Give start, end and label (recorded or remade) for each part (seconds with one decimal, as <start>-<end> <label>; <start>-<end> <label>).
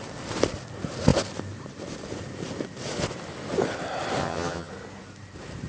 0.0-4.2 recorded; 4.2-4.7 remade; 4.7-5.7 recorded